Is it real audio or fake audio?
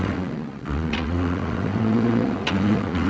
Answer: fake